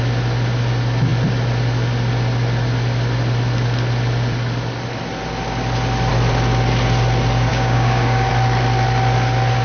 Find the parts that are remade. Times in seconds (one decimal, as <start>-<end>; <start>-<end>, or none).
7.5-8.3